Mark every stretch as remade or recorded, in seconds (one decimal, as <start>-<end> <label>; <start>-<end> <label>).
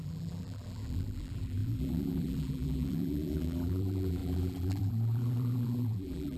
0.0-6.4 remade